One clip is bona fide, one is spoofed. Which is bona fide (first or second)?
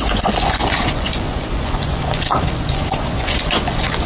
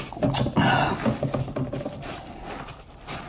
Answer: second